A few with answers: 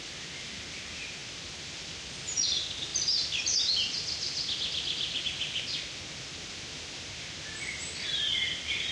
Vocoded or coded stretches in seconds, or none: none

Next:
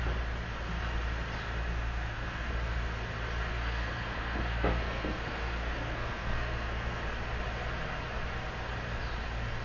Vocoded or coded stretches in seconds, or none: 1.7-2.5 (codec, SNAC); 3.5-7.0